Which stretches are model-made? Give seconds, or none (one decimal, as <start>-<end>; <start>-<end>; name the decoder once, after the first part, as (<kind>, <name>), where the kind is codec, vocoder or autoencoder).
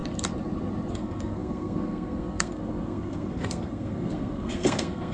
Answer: 0.9-5.1 (codec, SNAC)